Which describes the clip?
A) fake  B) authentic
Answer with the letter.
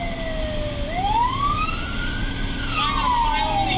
B